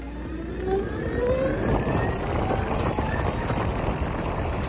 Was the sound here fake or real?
real